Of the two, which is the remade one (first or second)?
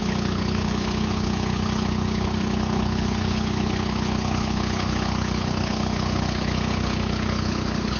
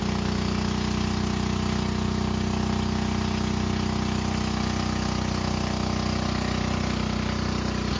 first